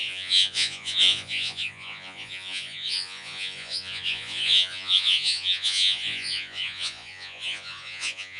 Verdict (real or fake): fake